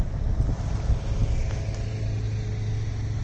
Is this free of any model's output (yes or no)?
yes